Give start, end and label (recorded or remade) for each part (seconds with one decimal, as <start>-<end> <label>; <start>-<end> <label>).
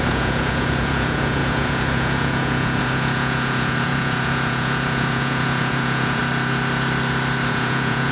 0.0-6.2 remade; 6.2-7.5 recorded; 7.5-8.1 remade